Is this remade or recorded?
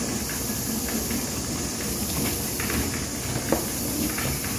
recorded